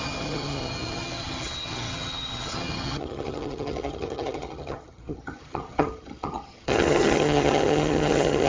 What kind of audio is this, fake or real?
fake